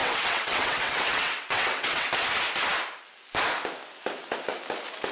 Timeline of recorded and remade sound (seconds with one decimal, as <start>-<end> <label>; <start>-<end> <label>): 0.0-2.1 remade; 2.1-5.1 recorded